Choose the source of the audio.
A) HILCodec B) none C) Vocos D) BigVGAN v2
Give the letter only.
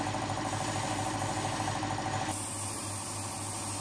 B